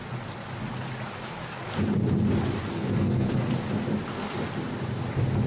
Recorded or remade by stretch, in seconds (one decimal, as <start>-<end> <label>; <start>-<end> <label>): 0.0-2.7 recorded; 2.7-3.4 remade; 3.4-5.5 recorded